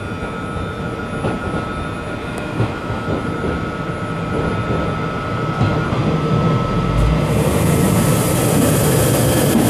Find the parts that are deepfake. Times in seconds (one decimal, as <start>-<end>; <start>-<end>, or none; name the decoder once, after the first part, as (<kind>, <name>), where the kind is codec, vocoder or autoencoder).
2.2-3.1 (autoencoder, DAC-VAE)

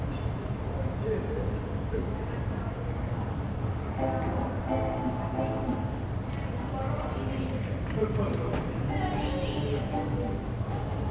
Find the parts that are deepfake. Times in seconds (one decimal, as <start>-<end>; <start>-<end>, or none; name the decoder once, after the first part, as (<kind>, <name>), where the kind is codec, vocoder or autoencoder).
none

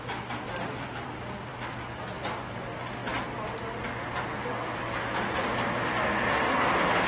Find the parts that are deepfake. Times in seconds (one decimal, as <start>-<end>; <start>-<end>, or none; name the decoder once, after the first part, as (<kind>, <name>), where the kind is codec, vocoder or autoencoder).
none